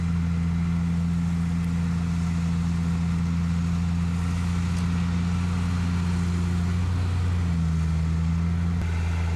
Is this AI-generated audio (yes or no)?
no